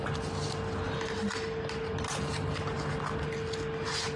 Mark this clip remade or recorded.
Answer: recorded